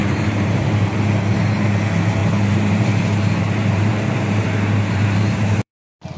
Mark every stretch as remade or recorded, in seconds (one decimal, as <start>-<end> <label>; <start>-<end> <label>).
0.0-1.4 remade; 1.4-2.2 recorded; 2.2-5.7 remade; 5.7-6.2 recorded